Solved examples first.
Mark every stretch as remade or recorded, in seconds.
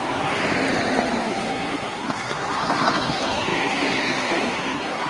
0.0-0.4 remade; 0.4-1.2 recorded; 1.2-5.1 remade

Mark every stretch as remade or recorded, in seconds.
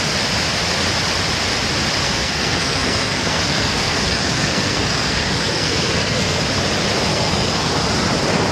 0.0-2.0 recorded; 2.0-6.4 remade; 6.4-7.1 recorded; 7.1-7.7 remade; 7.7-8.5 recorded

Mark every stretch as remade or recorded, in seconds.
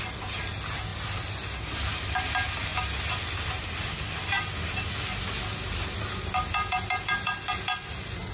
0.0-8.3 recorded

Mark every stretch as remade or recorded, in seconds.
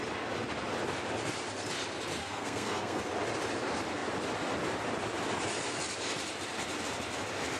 0.0-2.2 recorded; 2.2-3.0 remade; 3.0-7.6 recorded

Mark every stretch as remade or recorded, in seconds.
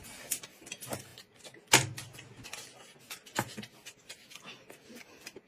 0.0-5.5 recorded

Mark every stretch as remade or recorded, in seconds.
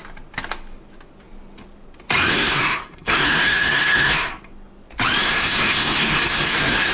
0.0-2.3 recorded; 2.3-4.3 remade; 4.3-5.2 recorded; 5.2-6.9 remade